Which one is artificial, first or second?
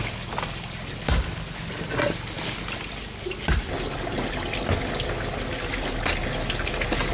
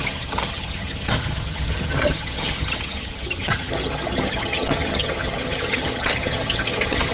second